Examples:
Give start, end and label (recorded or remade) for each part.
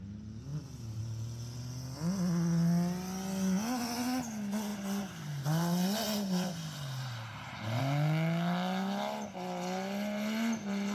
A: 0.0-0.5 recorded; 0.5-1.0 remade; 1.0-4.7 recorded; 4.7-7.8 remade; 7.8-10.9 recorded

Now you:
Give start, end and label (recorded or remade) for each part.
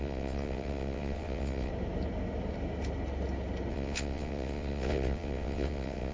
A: 0.0-1.7 remade; 1.7-3.7 recorded; 3.7-6.1 remade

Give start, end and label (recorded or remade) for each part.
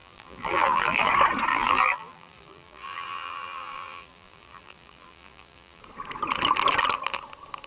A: 0.0-1.1 remade; 1.1-1.5 recorded; 1.5-5.8 remade; 5.8-7.7 recorded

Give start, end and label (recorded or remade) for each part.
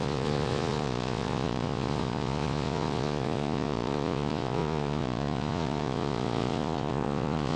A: 0.0-7.6 remade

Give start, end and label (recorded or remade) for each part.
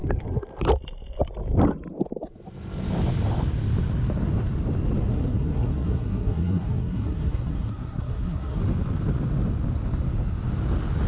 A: 0.0-5.1 recorded; 5.1-8.6 remade; 8.6-11.1 recorded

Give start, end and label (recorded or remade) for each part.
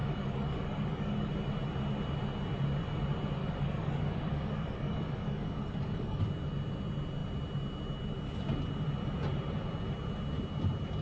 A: 0.0-1.3 remade; 1.3-3.4 recorded; 3.4-6.2 remade; 6.2-11.0 recorded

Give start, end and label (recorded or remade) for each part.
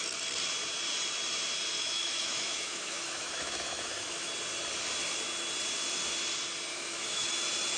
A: 0.0-1.8 recorded; 1.8-4.3 remade; 4.3-6.7 recorded; 6.7-7.3 remade; 7.3-7.8 recorded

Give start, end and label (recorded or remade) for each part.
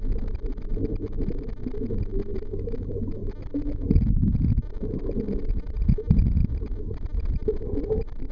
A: 0.0-8.3 recorded